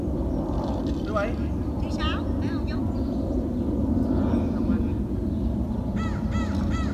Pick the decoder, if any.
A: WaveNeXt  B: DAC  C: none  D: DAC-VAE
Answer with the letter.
C